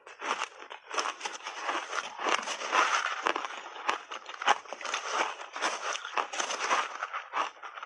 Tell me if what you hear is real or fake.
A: real